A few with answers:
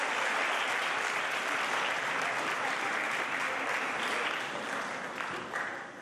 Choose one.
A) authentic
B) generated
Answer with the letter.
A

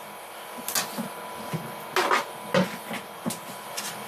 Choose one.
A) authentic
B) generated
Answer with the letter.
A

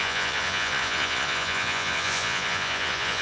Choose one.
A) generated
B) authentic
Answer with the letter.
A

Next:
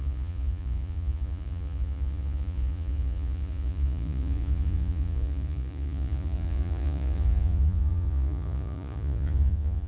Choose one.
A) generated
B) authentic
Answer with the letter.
A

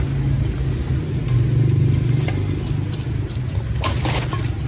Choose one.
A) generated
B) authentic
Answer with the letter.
B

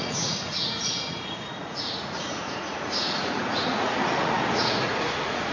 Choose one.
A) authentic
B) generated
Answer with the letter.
B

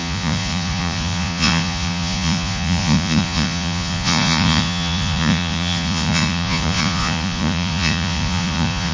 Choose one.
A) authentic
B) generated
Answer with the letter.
B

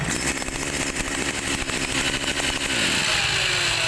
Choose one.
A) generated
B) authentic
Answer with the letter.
B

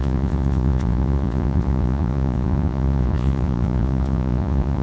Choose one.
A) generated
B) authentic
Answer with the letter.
A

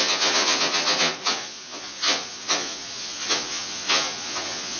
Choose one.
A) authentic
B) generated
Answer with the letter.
B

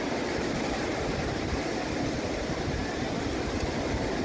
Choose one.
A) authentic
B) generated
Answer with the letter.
A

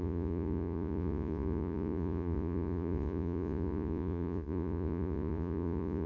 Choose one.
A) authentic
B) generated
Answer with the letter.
B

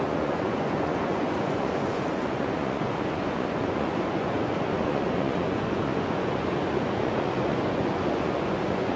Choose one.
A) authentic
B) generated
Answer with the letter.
B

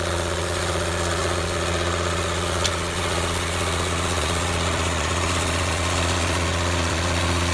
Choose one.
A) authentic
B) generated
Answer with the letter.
B